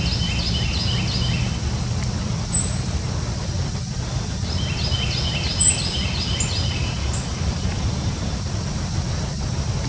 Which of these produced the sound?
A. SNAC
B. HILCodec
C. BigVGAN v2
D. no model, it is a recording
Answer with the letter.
D